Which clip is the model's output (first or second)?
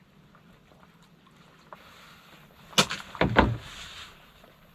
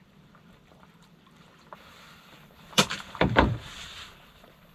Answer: second